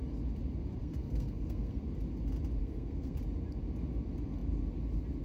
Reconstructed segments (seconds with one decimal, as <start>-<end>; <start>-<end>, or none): 0.8-1.8; 2.6-3.2